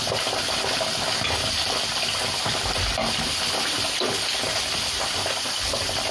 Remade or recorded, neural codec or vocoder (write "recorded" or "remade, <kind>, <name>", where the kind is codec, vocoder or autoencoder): recorded